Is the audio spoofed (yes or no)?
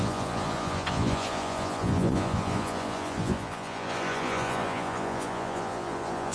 yes